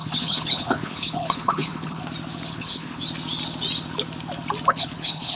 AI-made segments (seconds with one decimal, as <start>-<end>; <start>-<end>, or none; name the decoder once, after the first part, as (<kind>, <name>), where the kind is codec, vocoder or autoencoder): 0.0-2.0 (codec, HILCodec); 2.5-3.0; 4.7-5.4